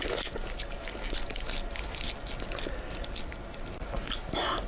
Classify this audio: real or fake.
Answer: real